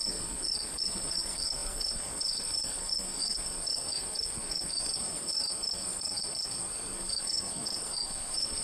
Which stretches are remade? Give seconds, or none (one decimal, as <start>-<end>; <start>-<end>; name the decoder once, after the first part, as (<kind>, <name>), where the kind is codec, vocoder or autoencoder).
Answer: 0.0-8.6 (codec, SNAC)